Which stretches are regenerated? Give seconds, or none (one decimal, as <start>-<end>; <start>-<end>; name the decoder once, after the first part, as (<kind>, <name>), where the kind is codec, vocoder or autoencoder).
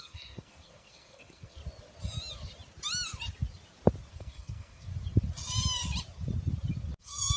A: 0.0-1.6 (codec, SNAC); 4.1-4.9; 7.0-7.4